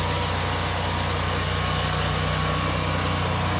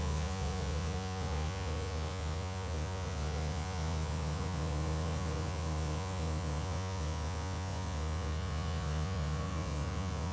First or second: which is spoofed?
second